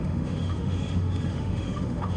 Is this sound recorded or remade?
remade